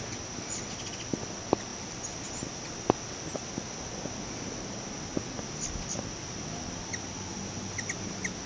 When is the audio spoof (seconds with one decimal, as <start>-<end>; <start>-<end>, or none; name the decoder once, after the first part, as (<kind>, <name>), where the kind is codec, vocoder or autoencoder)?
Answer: none